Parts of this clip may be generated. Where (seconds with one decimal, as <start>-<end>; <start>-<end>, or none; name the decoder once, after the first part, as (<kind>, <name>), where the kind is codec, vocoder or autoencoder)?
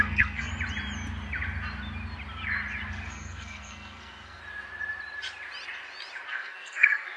0.0-0.5 (codec, SNAC); 2.9-4.4; 6.3-7.2